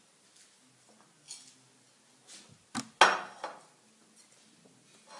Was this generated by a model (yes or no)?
no